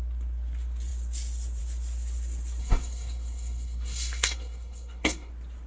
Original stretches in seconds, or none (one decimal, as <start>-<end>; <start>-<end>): 0.0-2.6; 5.3-5.7